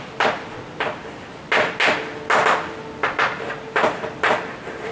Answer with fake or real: real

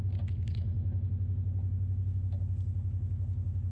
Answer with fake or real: real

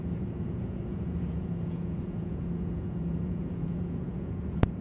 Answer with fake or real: fake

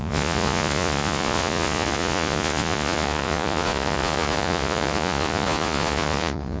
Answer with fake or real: fake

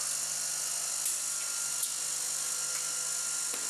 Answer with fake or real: real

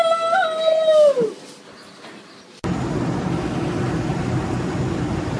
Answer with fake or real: real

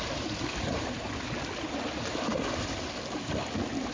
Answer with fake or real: real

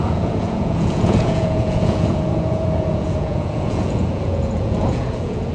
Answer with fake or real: fake